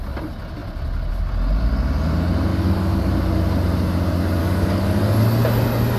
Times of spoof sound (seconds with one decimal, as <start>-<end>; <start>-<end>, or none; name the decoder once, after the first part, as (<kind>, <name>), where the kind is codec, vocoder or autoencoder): 2.5-3.1 (codec, DAC); 4.4-5.2